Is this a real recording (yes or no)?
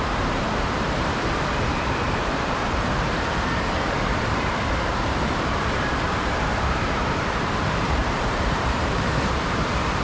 no